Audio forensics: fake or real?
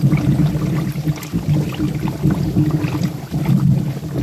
real